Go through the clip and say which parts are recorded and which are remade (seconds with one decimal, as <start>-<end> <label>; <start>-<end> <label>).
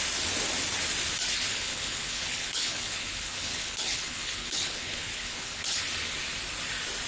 0.0-1.5 recorded; 1.5-5.8 remade; 5.8-7.1 recorded